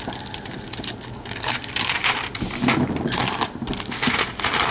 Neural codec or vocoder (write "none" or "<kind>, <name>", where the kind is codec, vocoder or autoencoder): none